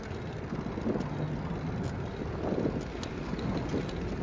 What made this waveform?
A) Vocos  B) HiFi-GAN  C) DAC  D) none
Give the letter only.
D